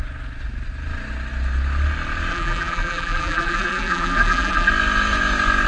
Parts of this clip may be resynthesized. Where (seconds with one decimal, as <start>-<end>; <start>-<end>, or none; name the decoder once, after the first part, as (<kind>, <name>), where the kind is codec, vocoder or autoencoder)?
2.3-4.7 (vocoder, BigVGAN v2)